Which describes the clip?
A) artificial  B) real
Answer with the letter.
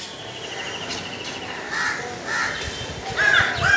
B